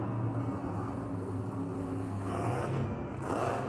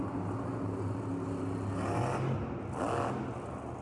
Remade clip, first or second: first